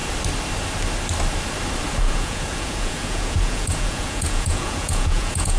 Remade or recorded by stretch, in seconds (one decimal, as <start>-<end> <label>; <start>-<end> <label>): 0.0-2.0 recorded; 2.0-5.6 remade